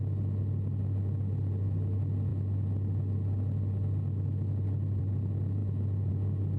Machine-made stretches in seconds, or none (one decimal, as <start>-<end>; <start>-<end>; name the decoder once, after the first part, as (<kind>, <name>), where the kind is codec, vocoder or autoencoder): none